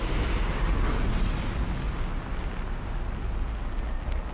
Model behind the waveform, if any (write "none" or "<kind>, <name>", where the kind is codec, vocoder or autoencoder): none